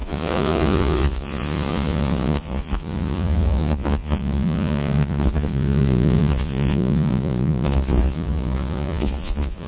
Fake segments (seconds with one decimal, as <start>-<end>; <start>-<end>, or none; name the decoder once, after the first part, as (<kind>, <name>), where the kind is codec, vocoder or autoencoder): 0.0-9.7 (vocoder, Vocos)